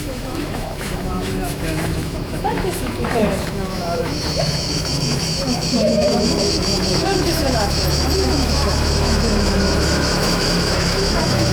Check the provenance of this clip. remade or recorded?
remade